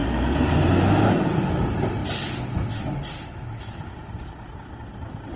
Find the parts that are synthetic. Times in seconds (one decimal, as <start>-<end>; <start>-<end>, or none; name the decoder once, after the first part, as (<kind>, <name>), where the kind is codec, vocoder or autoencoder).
0.0-0.6 (vocoder, BigVGAN v2); 4.0-4.6